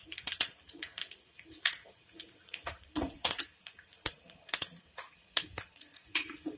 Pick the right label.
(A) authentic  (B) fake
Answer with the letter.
B